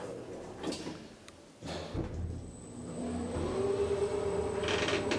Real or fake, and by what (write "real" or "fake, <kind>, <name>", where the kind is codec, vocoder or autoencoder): real